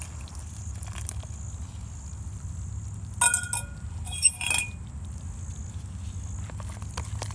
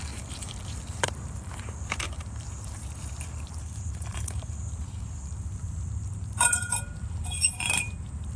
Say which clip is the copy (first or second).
second